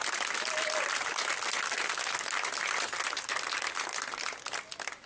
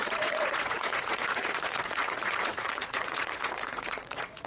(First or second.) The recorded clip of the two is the first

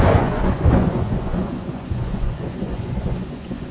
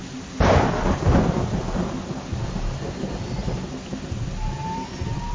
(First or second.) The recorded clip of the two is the second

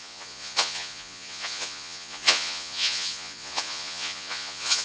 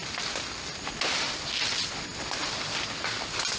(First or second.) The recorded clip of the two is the second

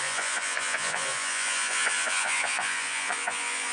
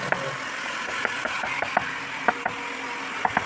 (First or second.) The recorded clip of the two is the second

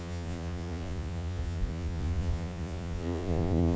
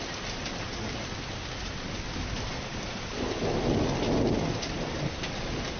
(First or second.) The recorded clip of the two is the second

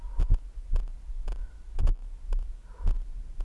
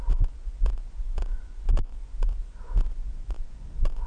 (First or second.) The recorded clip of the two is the first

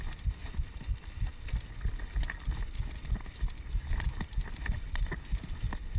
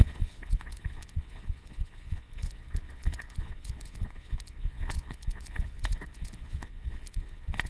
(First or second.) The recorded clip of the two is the first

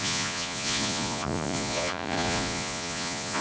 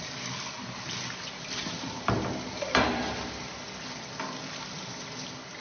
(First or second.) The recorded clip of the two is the second